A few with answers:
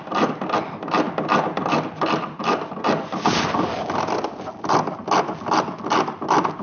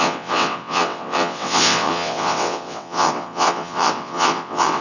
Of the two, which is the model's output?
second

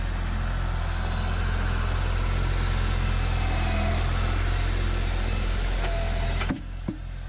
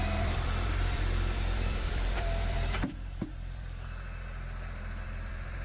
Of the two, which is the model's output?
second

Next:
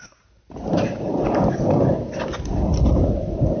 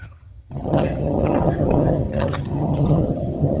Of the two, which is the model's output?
second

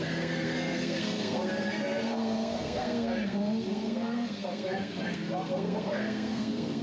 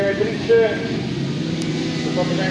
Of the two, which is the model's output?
first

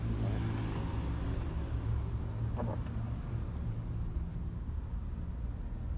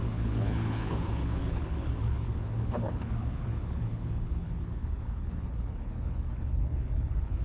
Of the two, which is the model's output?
second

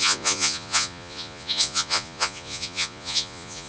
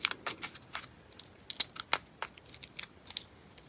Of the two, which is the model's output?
first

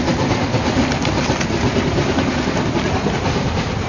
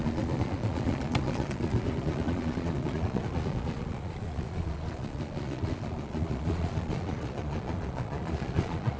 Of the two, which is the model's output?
second